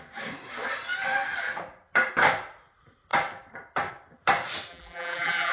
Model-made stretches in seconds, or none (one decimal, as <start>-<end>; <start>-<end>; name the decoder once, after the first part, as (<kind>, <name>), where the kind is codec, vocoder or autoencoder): 4.7-5.5 (vocoder, BigVGAN v2)